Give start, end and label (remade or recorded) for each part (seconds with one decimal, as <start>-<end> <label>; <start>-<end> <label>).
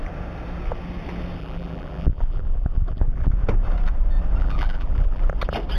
0.0-1.4 recorded; 1.4-3.3 remade; 3.3-4.4 recorded; 4.4-5.2 remade; 5.2-5.8 recorded